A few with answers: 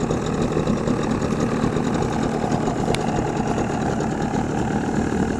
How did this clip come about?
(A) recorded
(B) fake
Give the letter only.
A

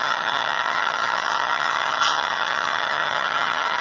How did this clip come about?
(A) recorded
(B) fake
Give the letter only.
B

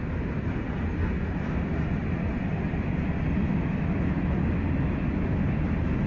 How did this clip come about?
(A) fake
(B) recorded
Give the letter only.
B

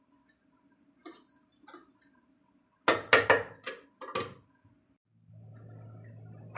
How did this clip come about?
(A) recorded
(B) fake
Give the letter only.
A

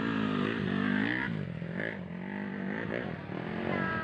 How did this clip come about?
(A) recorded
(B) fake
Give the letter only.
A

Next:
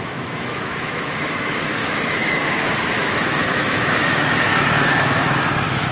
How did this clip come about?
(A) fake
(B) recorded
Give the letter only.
A